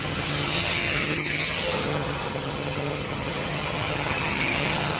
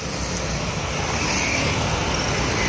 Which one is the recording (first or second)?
second